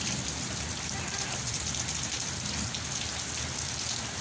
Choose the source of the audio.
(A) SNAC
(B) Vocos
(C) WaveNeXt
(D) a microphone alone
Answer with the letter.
D